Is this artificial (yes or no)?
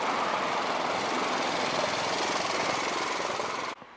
no